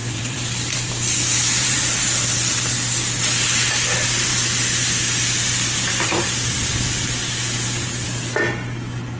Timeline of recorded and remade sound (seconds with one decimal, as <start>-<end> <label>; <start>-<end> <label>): 0.0-1.8 remade; 1.8-9.2 recorded

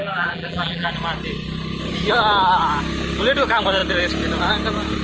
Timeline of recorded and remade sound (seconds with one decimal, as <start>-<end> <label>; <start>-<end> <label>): 0.0-0.9 remade; 0.9-5.0 recorded

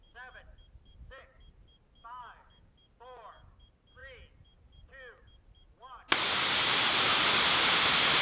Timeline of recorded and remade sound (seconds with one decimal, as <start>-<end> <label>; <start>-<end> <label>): 0.0-8.2 recorded

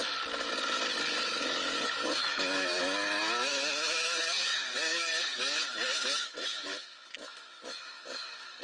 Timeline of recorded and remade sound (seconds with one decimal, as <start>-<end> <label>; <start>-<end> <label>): 0.0-1.2 recorded; 1.2-8.6 remade

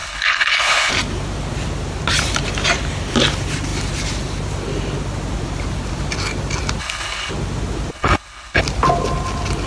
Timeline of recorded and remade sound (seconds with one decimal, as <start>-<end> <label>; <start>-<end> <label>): 0.0-0.9 remade; 0.9-6.8 recorded; 6.8-7.3 remade; 7.3-7.9 recorded; 7.9-8.6 remade; 8.6-9.7 recorded